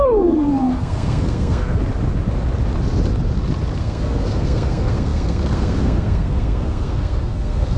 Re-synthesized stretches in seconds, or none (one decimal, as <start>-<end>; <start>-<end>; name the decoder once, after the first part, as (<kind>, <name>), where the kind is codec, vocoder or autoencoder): 0.0-1.8 (codec, SNAC); 3.8-7.8